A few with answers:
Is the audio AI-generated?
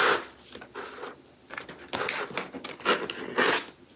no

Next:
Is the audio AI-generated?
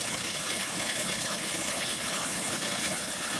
yes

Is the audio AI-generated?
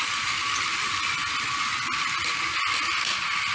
no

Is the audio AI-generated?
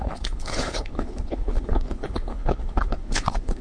yes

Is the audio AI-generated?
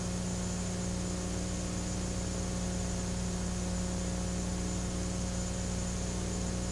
no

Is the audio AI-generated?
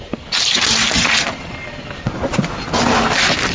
no